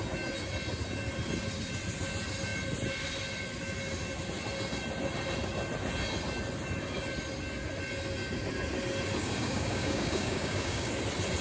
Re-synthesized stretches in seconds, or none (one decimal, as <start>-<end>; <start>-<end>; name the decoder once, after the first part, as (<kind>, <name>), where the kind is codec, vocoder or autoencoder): 9.2-10.9 (codec, DAC)